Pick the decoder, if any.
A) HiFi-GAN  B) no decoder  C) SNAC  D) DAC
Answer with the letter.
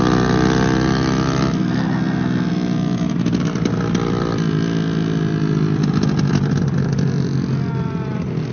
B